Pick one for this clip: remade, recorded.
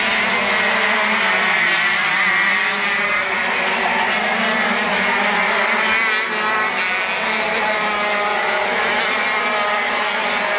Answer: recorded